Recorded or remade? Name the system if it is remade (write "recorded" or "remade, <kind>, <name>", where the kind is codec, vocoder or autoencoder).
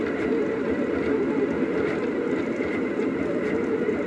recorded